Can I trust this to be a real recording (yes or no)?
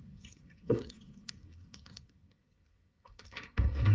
no